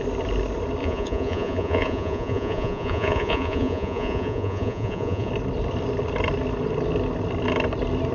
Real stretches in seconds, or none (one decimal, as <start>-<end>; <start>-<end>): 0.0-0.8; 5.3-8.1